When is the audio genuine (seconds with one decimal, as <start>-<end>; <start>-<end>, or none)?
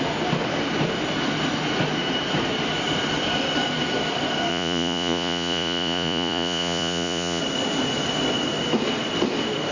0.0-4.5; 7.4-9.7